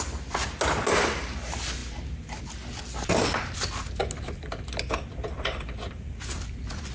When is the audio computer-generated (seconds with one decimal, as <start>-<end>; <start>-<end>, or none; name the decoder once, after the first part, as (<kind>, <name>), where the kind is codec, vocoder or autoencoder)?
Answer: none